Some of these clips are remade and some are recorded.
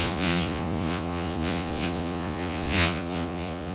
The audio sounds remade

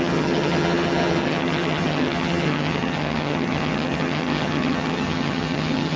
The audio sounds remade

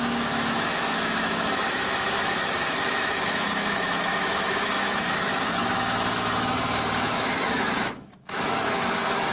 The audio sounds remade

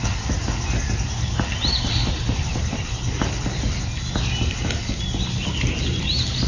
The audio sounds recorded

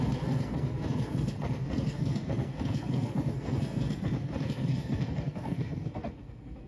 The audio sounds remade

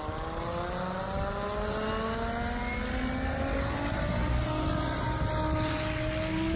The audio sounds recorded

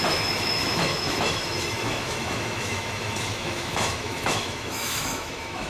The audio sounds remade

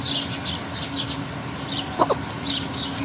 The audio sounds recorded